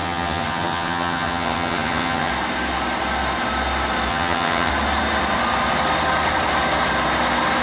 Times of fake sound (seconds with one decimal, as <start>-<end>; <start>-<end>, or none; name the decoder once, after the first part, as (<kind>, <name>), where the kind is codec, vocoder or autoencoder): 0.0-2.3 (vocoder, HiFi-GAN); 4.1-4.7